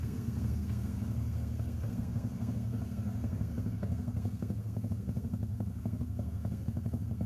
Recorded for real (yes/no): no